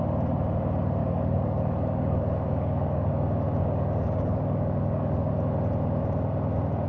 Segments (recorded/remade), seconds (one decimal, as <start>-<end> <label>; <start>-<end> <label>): 0.0-1.0 recorded; 1.0-3.1 remade; 3.1-3.6 recorded; 3.6-5.3 remade; 5.3-6.9 recorded